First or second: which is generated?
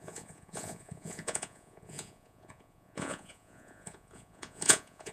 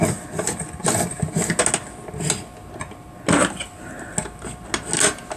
first